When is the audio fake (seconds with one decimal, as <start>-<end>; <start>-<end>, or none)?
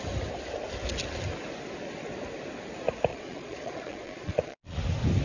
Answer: 3.1-4.8